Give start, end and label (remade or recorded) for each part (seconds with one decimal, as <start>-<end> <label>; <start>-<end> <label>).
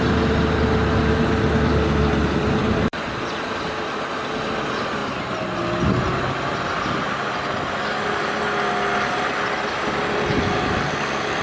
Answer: 0.0-2.6 recorded; 2.6-4.3 remade; 4.3-5.0 recorded; 5.0-5.6 remade; 5.6-8.9 recorded; 8.9-10.3 remade; 10.3-11.4 recorded